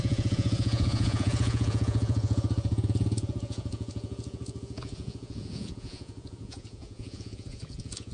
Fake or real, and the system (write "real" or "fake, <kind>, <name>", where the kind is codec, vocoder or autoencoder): fake, vocoder, Vocos